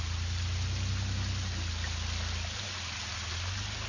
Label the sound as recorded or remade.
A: recorded